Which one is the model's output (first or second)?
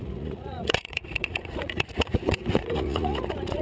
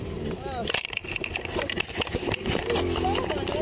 first